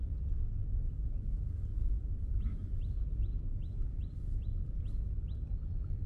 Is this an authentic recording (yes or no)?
yes